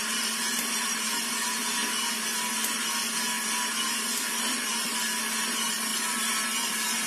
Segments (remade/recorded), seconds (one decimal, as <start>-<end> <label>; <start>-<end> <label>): 0.0-1.8 remade; 1.8-4.3 recorded; 4.3-4.9 remade; 4.9-5.4 recorded; 5.4-7.1 remade